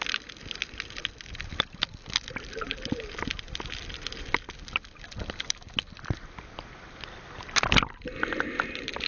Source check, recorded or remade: recorded